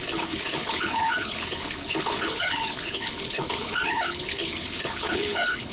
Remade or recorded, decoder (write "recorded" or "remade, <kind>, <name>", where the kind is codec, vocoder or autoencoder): remade, codec, HILCodec